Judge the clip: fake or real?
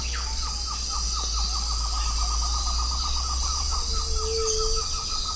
real